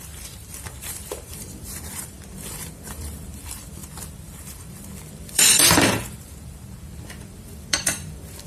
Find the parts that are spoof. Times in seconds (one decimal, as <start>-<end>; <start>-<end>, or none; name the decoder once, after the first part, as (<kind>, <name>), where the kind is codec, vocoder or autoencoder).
0.0-8.5 (vocoder, BigVGAN v2)